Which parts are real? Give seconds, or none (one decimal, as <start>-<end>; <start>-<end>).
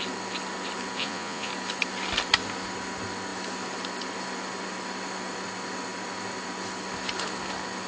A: 0.0-1.0; 1.5-7.9